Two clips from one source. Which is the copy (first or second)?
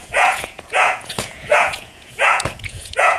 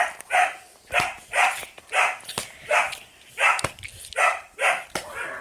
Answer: first